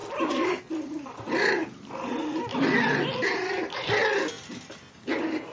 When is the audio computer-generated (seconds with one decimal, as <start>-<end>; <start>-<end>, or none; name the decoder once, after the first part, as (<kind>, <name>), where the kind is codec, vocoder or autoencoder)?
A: none